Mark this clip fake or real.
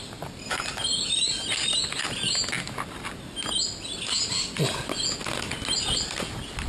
real